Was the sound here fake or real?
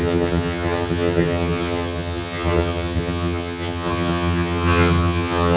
fake